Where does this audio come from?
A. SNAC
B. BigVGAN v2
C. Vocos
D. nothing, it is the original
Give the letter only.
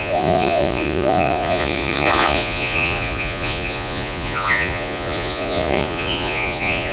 C